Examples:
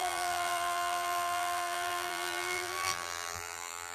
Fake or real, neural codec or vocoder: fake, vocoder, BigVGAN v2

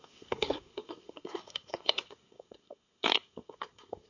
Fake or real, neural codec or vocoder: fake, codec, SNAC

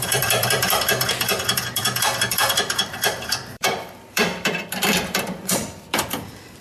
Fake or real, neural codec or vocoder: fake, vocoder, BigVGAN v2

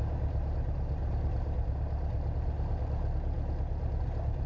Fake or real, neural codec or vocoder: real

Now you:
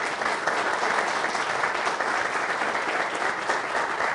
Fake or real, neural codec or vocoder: real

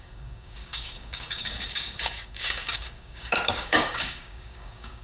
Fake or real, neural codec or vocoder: fake, codec, DAC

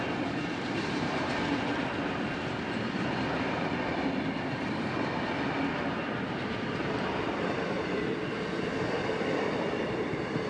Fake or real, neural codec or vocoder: fake, vocoder, BigVGAN v2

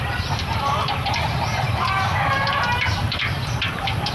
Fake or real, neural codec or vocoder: fake, vocoder, BigVGAN v2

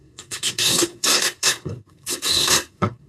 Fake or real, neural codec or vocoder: fake, codec, SNAC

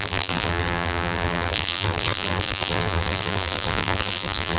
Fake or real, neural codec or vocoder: fake, vocoder, BigVGAN v2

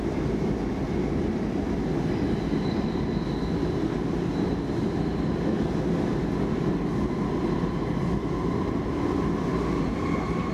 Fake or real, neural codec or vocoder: real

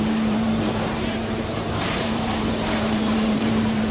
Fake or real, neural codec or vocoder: fake, vocoder, BigVGAN v2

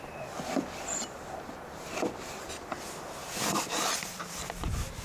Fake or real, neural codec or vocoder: fake, vocoder, BigVGAN v2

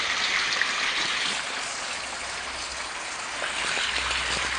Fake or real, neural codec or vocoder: real